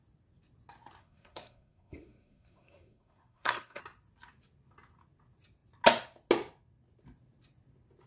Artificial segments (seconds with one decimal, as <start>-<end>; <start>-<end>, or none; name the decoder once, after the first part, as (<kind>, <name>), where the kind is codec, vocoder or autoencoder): 1.0-3.8 (codec, SNAC)